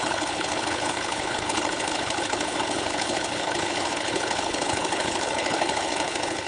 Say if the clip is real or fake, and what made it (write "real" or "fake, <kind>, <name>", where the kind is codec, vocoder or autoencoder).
fake, codec, HILCodec